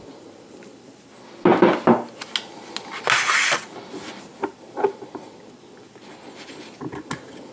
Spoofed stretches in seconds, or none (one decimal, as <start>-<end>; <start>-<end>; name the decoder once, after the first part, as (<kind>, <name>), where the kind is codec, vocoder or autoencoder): none